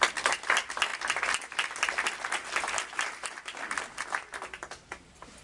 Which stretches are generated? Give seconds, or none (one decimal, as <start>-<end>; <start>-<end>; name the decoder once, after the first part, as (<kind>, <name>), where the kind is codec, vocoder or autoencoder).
none